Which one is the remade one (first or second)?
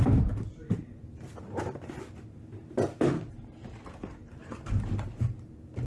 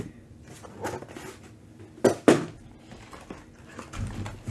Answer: first